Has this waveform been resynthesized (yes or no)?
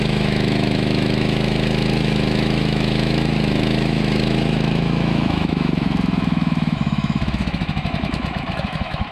yes